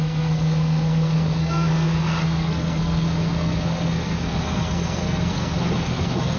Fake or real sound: fake